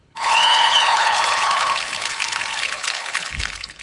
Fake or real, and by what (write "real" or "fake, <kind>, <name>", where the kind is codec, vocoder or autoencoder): fake, codec, HILCodec